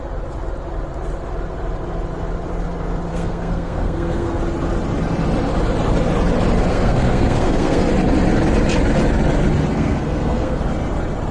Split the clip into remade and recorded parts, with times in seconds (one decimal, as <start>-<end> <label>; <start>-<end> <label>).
0.0-3.1 recorded; 3.1-4.4 remade; 4.4-6.7 recorded; 6.7-7.9 remade; 7.9-9.7 recorded; 9.7-10.6 remade; 10.6-11.3 recorded